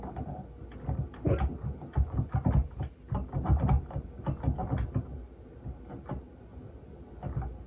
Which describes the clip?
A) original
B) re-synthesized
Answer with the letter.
A